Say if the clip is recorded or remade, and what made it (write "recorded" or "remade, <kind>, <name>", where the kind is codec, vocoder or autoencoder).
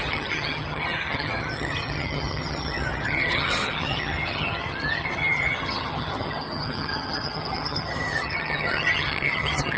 remade, vocoder, HiFi-GAN